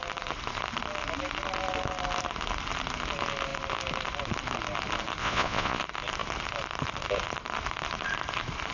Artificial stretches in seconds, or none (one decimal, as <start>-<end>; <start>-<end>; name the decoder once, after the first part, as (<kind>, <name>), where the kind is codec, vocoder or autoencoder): 5.2-5.8 (vocoder, Vocos)